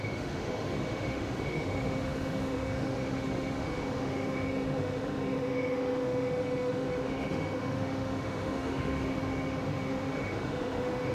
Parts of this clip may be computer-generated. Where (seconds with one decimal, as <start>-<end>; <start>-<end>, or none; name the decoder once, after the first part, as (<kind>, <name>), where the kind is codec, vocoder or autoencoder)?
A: 0.0-11.1 (autoencoder, DAC-VAE)